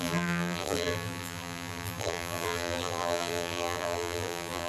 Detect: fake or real fake